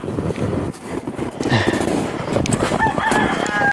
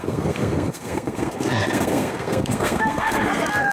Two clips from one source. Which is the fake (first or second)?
second